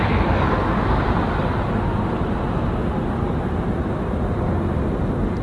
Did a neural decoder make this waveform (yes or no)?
no